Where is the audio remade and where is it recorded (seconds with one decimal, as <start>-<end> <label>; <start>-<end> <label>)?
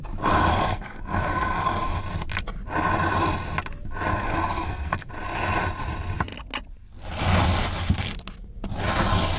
0.0-0.5 recorded; 0.5-2.0 remade; 2.0-4.1 recorded; 4.1-5.1 remade; 5.1-9.4 recorded